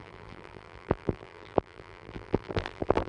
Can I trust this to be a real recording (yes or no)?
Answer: no